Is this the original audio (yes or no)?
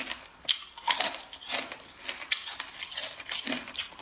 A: yes